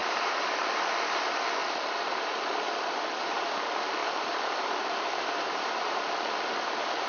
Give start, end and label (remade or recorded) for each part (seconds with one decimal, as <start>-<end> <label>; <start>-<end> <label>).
0.0-0.8 remade; 0.8-1.6 recorded; 1.6-2.4 remade; 2.4-4.0 recorded; 4.0-6.1 remade; 6.1-7.1 recorded